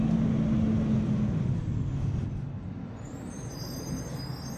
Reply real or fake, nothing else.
real